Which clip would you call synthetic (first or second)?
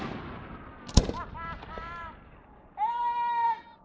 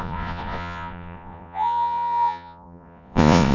second